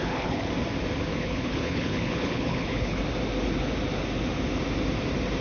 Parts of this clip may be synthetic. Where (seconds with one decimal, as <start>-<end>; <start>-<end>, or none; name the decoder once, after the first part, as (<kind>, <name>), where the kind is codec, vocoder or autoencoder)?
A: 0.0-0.5 (codec, HILCodec); 1.1-3.0

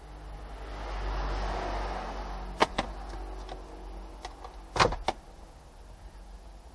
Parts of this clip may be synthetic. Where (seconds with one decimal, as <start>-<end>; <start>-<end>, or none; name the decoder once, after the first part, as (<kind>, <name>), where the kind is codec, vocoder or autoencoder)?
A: none